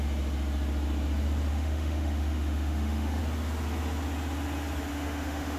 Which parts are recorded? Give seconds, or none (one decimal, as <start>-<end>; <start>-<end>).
0.0-1.5; 3.2-4.9